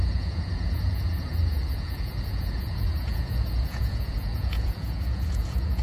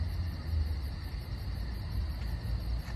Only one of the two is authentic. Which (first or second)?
second